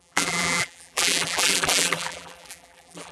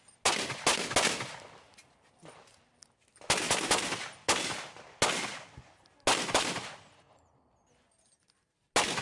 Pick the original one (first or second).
second